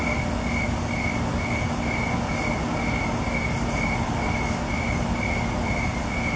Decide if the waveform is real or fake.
real